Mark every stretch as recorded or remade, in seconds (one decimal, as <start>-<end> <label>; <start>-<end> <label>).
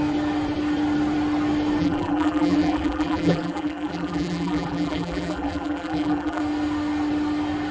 0.0-1.8 recorded; 1.8-6.4 remade; 6.4-7.7 recorded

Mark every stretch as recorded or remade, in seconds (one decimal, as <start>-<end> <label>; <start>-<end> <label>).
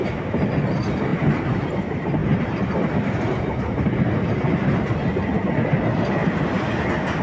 0.0-1.1 remade; 1.1-1.7 recorded; 1.7-6.2 remade; 6.2-7.2 recorded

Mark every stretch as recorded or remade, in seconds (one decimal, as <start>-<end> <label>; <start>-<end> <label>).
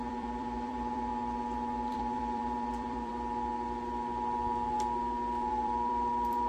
0.0-1.1 remade; 1.1-1.9 recorded; 1.9-3.1 remade; 3.1-5.5 recorded; 5.5-6.5 remade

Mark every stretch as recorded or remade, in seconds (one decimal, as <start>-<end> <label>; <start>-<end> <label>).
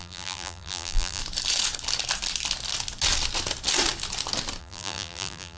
0.0-1.2 remade; 1.2-4.6 recorded; 4.6-5.6 remade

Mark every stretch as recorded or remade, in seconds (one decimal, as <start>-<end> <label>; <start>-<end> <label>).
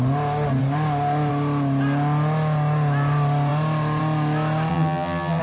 0.0-4.7 recorded; 4.7-5.4 remade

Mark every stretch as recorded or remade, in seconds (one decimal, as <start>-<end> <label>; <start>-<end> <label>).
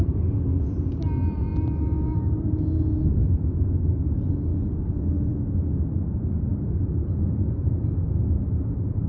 0.0-9.1 recorded